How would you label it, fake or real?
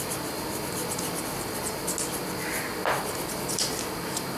real